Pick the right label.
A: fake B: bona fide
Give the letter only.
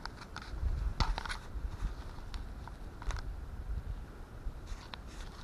B